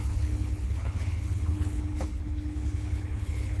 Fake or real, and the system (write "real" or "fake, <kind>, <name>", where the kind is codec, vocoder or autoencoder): fake, codec, HILCodec